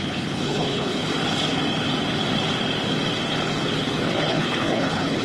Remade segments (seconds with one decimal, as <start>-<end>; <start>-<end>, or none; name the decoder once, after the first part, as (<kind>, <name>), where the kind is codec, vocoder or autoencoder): 0.0-1.1 (codec, HILCodec); 4.2-5.2